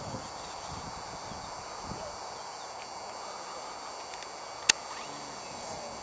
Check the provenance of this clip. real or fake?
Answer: real